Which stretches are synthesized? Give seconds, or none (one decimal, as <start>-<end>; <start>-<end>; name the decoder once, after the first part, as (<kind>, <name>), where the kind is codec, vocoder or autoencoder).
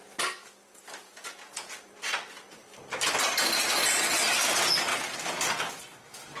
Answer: 1.0-1.8 (vocoder, Vocos)